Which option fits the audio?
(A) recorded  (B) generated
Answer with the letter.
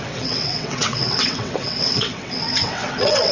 B